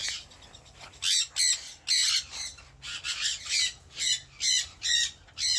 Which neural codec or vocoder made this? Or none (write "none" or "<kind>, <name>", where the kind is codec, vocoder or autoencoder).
none